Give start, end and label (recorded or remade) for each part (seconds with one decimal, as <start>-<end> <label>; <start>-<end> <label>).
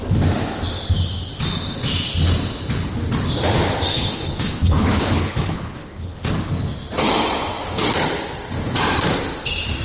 0.0-3.9 recorded; 3.9-6.3 remade; 6.3-9.8 recorded